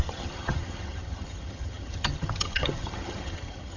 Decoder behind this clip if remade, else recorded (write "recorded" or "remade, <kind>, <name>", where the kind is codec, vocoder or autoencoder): remade, vocoder, HiFi-GAN